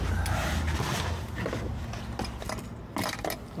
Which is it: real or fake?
real